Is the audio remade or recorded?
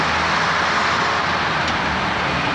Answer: recorded